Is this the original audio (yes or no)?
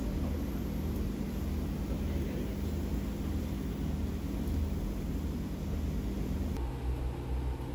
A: yes